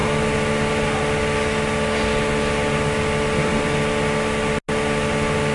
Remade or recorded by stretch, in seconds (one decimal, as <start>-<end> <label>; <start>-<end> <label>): 0.0-5.5 recorded